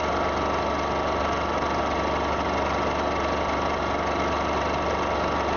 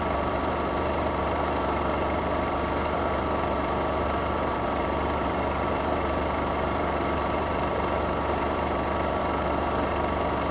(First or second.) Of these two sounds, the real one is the first